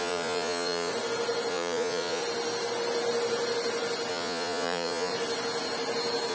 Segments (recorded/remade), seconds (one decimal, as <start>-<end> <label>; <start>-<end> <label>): 0.0-0.9 remade; 0.9-1.5 recorded; 1.5-2.2 remade; 2.2-4.1 recorded; 4.1-5.1 remade; 5.1-6.3 recorded